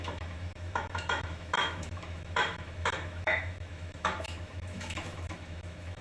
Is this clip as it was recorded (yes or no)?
no